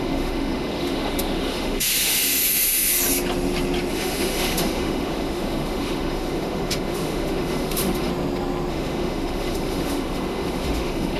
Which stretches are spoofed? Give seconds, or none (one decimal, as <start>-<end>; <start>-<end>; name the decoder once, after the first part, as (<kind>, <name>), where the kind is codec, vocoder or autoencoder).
0.0-2.9 (autoencoder, DAC-VAE); 3.9-8.1; 8.7-11.2